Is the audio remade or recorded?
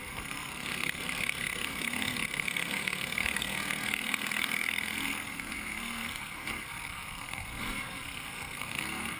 remade